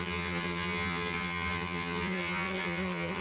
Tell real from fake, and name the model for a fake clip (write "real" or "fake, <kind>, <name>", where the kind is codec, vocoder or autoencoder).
fake, vocoder, HiFi-GAN